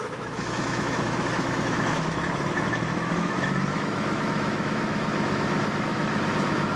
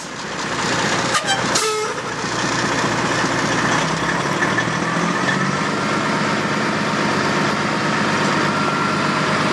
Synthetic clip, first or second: first